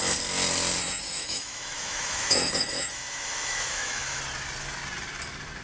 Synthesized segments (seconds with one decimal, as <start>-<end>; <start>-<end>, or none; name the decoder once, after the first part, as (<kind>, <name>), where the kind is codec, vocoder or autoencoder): 0.8-4.2 (autoencoder, DAC-VAE)